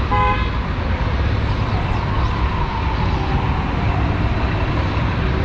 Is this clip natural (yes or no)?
yes